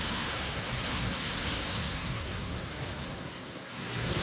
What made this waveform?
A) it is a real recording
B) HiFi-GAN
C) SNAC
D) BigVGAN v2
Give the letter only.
C